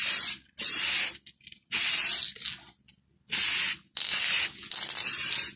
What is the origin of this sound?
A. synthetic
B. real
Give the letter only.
B